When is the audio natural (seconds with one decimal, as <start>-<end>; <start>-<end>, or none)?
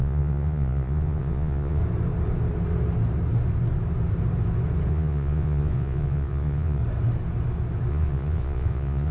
1.8-4.9; 6.8-7.9